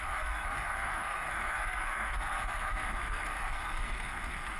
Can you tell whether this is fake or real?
fake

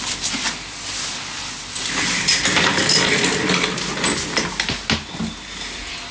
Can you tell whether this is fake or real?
real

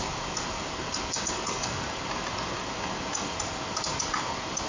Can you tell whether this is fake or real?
real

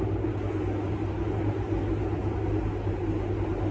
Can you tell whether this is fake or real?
real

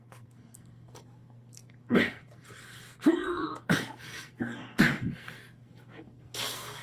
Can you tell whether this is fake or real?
fake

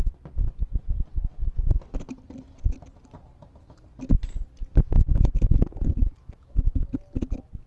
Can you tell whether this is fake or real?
real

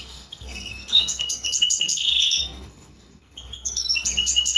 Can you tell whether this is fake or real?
fake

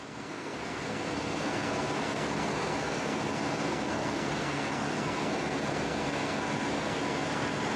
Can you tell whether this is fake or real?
fake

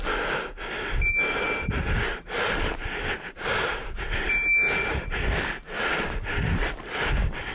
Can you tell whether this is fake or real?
real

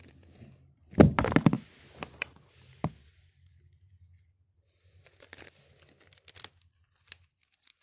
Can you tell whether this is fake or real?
real